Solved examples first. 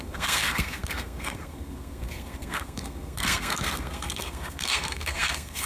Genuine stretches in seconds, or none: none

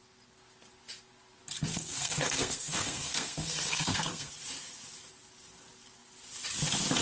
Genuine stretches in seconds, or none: 0.0-1.7; 4.3-7.0

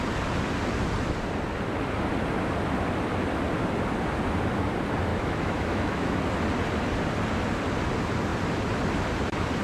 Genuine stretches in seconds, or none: 0.0-5.1; 6.2-9.6

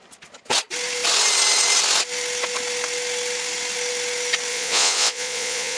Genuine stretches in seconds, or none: 0.0-4.5

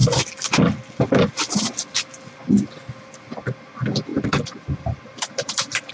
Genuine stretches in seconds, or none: 0.0-4.1

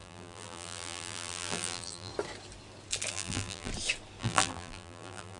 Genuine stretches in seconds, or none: 2.1-3.1; 3.7-4.2

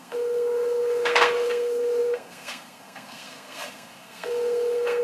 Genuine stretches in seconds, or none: none

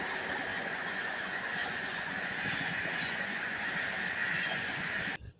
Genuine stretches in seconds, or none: 0.0-0.5; 3.7-4.2; 5.0-5.4